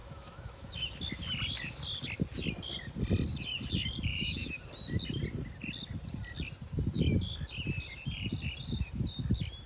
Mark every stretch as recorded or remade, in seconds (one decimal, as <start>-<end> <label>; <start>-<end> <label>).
0.0-0.9 remade; 0.9-4.1 recorded; 4.1-4.6 remade; 4.6-9.7 recorded